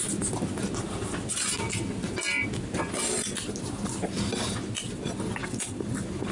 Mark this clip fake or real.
real